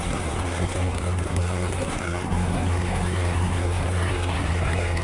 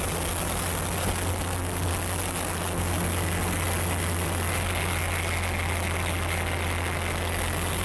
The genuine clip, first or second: second